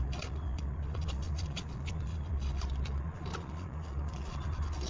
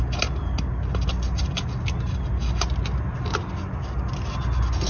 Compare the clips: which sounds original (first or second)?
second